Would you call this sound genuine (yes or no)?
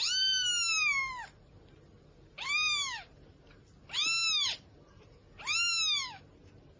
yes